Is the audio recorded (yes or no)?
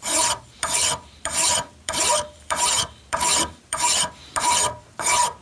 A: no